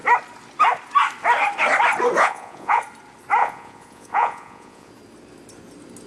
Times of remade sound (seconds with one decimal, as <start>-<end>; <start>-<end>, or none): 2.2-2.8; 3.4-4.9